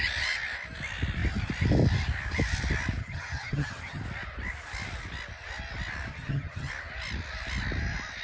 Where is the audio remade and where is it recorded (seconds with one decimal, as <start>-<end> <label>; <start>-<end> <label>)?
0.0-3.0 recorded; 3.0-4.0 remade; 4.0-6.1 recorded; 6.1-6.7 remade; 6.7-8.2 recorded